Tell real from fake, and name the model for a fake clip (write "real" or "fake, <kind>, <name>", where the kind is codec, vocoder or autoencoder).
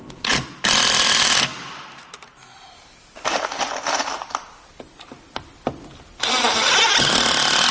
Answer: real